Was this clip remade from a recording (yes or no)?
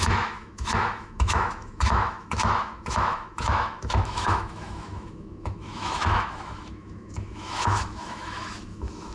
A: yes